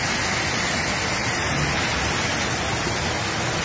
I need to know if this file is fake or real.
real